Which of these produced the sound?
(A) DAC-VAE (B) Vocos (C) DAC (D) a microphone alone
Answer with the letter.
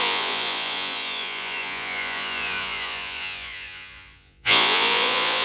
B